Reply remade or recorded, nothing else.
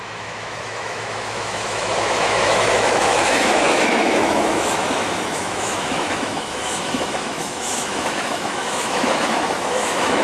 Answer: remade